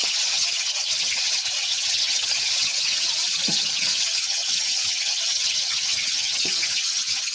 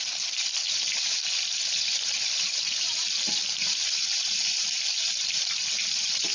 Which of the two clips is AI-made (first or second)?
first